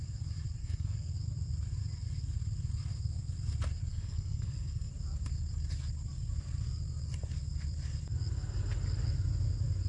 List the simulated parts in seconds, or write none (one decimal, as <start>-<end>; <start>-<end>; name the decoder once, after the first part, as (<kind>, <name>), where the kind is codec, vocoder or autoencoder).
0.6-1.1 (codec, SNAC); 3.9-4.9